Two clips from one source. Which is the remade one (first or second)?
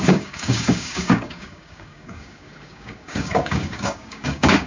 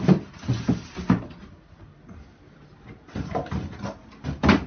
first